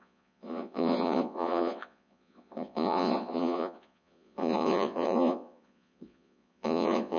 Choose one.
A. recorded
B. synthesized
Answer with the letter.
B